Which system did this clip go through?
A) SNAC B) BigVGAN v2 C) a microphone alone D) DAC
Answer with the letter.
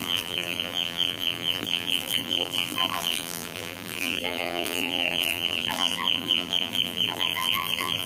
B